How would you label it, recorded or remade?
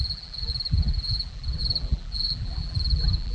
remade